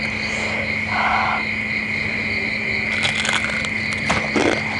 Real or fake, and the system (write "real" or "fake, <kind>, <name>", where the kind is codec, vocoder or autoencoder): real